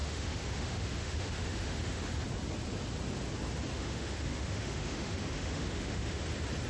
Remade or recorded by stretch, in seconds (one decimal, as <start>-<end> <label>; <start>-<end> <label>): 0.0-2.1 remade; 2.1-3.7 recorded; 3.7-6.2 remade; 6.2-6.7 recorded